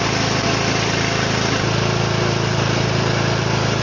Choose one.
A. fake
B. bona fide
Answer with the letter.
B